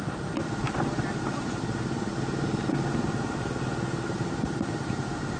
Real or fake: real